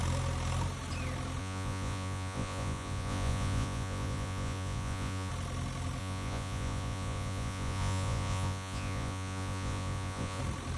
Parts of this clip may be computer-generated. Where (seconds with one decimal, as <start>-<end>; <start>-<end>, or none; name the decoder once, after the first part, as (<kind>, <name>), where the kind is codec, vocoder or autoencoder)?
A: 1.4-5.3 (vocoder, Vocos); 6.0-10.4